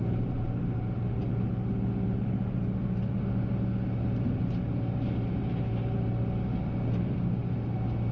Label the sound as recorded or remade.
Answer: recorded